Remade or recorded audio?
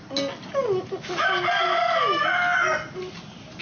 recorded